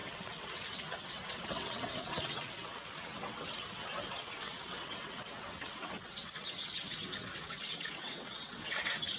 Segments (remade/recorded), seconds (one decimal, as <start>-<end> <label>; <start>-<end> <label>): 0.0-9.2 remade

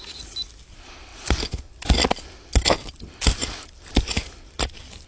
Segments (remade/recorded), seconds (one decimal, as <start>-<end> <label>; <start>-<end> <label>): 0.0-5.1 recorded

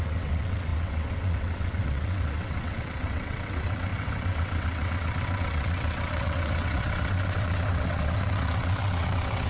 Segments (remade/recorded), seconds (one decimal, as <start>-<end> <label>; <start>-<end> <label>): 0.0-9.5 remade

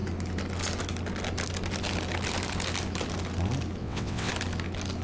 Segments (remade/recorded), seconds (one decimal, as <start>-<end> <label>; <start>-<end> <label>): 0.0-3.8 recorded; 3.8-4.3 remade; 4.3-5.0 recorded

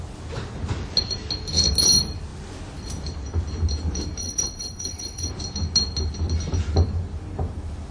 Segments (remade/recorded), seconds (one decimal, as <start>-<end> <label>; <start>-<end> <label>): 0.0-4.2 recorded; 4.2-5.3 remade; 5.3-7.9 recorded